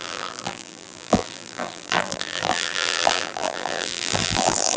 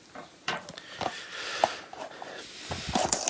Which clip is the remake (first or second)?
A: first